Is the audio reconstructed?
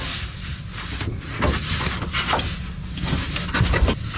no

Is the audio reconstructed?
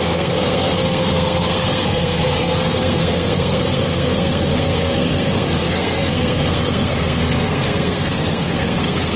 yes